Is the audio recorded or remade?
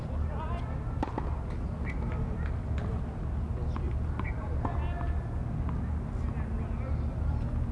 recorded